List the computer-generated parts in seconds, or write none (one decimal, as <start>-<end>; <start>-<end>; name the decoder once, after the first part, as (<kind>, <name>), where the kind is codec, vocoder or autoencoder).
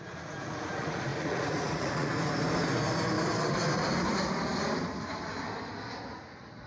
0.0-2.1 (vocoder, Vocos); 6.1-6.7